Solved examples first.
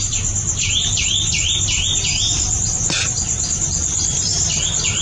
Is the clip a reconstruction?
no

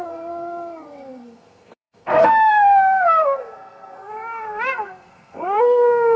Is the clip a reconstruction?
yes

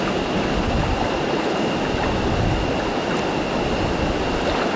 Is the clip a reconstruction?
no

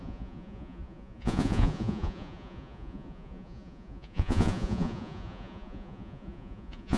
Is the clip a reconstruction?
yes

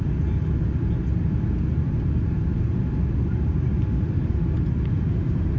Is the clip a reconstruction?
no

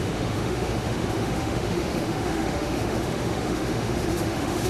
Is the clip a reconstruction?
yes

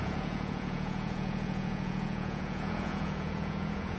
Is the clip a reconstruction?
yes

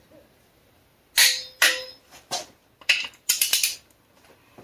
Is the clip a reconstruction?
no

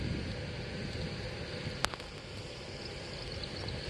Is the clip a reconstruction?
no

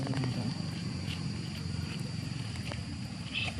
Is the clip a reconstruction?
yes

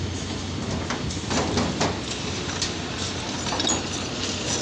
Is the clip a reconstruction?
no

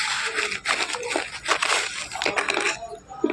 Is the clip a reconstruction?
no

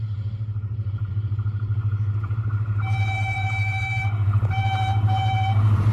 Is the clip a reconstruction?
yes